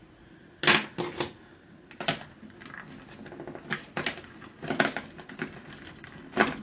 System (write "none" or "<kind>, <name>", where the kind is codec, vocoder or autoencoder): none